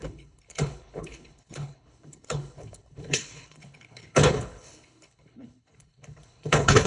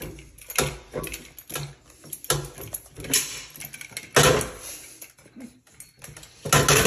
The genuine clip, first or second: second